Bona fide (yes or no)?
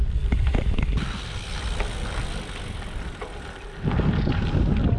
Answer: yes